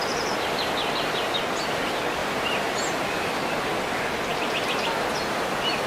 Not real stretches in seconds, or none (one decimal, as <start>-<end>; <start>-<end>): 2.2-2.9